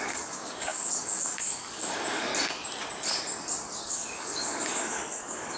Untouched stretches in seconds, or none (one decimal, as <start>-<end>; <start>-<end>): 2.3-3.8